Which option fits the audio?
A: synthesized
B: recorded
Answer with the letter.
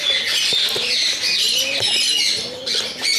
B